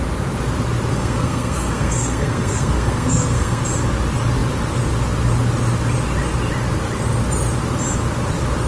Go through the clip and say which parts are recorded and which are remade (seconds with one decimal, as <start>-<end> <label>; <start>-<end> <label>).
0.0-0.9 recorded; 0.9-3.6 remade; 3.6-8.7 recorded